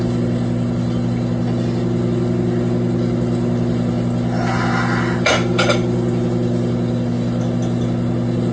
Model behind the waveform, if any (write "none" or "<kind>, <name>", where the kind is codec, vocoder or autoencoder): none